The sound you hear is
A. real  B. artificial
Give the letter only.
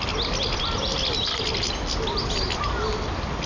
A